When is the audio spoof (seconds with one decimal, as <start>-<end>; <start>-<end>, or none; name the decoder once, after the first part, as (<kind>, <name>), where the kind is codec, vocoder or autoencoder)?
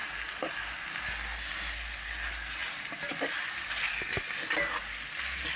none